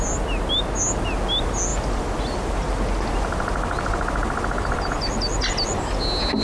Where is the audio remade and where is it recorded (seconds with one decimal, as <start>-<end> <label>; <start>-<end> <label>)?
0.0-6.4 recorded